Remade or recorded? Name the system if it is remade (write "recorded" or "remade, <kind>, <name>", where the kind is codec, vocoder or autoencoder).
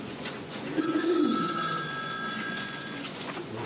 remade, vocoder, Vocos